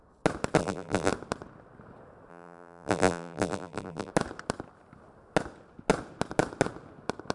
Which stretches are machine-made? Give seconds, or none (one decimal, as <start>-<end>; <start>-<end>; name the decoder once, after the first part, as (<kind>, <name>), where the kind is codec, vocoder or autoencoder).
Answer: 0.6-1.1 (vocoder, BigVGAN v2); 2.3-4.1